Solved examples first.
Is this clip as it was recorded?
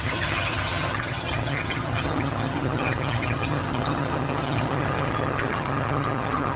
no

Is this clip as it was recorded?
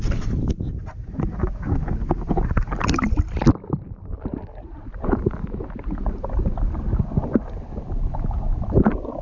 yes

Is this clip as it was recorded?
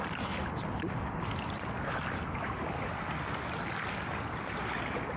yes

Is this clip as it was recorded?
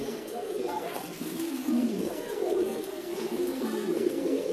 no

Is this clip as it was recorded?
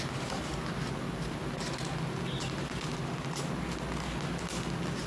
yes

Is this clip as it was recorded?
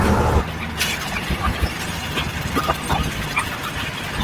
no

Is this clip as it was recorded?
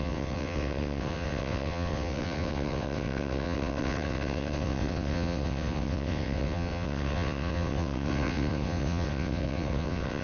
no